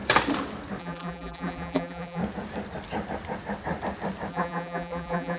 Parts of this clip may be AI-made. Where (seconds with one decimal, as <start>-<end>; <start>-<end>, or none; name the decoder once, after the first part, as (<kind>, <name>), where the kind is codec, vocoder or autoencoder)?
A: 0.8-2.2 (vocoder, BigVGAN v2); 4.3-5.4